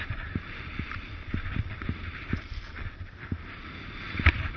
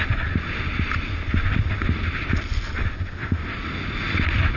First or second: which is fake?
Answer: first